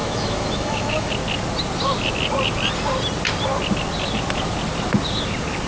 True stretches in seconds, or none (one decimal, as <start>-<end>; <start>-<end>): 1.1-5.7